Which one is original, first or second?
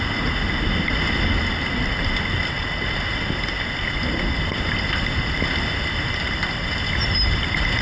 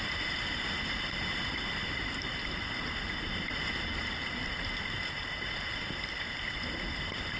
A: first